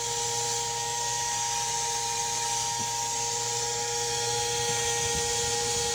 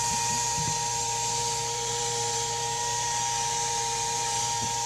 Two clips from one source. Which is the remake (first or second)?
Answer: second